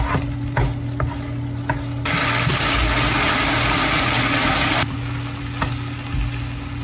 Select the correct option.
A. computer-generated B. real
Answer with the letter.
B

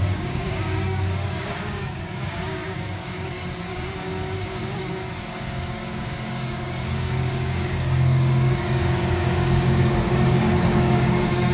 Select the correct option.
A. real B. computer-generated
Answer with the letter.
B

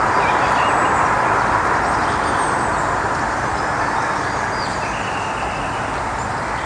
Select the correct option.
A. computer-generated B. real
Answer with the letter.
B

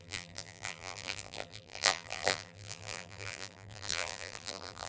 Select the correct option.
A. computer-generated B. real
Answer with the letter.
A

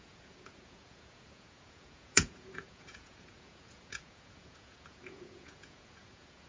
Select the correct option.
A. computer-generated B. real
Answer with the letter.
A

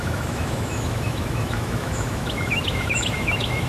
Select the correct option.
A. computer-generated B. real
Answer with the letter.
A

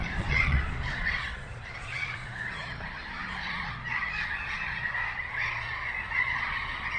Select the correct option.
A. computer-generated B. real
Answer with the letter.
A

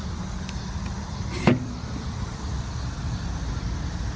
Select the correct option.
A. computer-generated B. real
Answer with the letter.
A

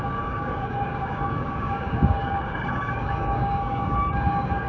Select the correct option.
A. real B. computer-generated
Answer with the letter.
B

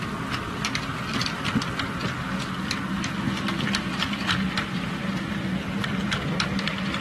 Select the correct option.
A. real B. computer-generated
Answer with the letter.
A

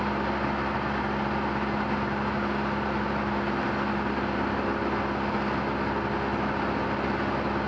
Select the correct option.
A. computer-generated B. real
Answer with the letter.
B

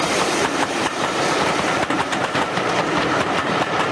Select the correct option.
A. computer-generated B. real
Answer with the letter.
A